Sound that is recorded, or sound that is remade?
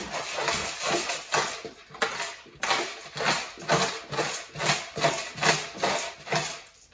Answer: recorded